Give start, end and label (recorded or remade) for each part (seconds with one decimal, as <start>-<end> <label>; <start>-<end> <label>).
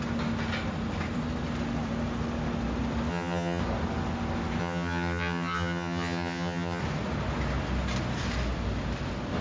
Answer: 0.0-3.1 recorded; 3.1-3.6 remade; 3.6-4.6 recorded; 4.6-6.8 remade; 6.8-9.4 recorded